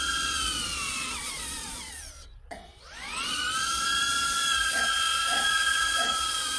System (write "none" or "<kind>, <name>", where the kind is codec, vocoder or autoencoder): vocoder, Vocos